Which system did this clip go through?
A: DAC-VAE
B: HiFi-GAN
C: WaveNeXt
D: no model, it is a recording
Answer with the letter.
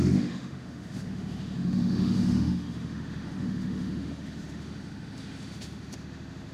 A